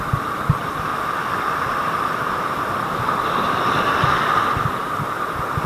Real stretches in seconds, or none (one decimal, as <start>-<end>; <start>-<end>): 0.0-5.7